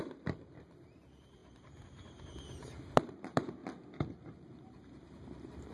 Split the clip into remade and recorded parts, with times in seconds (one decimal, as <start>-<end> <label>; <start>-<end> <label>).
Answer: 0.0-3.6 remade; 3.6-4.1 recorded; 4.1-5.7 remade